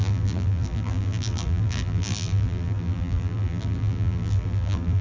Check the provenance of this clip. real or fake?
fake